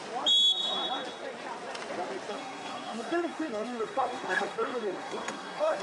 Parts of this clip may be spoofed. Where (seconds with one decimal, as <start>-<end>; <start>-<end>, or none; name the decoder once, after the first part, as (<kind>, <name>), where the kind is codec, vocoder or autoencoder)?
2.3-5.8 (codec, SNAC)